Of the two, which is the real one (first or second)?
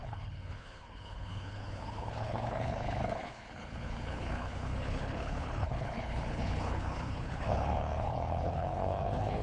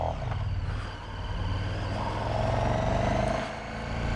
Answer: second